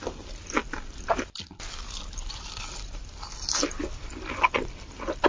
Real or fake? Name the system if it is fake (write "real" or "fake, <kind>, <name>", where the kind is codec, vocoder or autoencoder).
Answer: fake, vocoder, BigVGAN v2